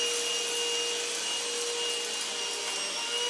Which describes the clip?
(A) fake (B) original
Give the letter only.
B